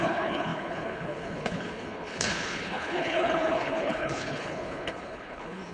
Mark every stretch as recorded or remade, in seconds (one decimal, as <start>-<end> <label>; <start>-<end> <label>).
0.0-5.7 remade